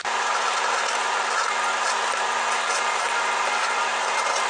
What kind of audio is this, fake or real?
real